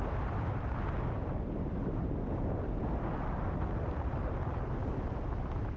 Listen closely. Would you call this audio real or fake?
real